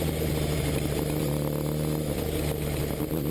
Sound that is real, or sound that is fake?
real